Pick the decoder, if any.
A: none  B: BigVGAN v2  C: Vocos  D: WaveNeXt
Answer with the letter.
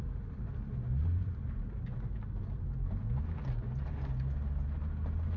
A